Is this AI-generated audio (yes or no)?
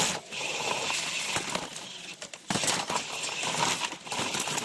no